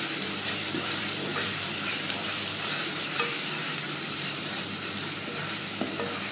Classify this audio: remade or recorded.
remade